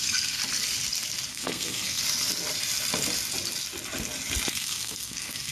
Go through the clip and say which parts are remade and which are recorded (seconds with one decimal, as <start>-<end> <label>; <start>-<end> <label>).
0.0-0.4 remade; 0.4-1.3 recorded; 1.3-2.0 remade; 2.0-4.5 recorded; 4.5-5.5 remade